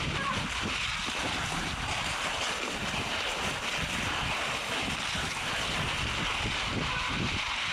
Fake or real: real